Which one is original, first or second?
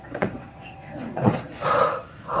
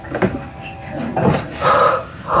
second